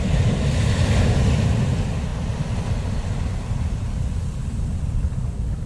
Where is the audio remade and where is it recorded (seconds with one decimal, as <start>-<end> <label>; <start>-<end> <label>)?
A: 0.0-5.7 recorded